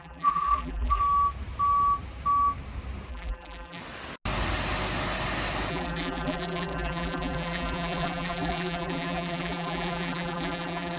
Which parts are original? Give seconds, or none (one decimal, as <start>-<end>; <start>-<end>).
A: 1.0-3.1; 3.8-5.7